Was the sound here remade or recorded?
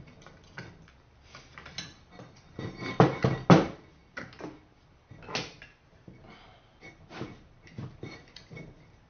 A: recorded